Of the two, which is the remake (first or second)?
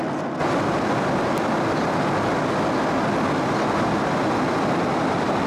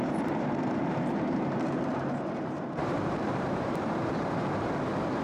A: second